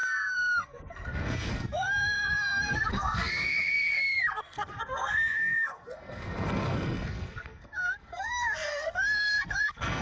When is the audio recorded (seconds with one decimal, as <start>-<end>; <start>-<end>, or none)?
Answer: none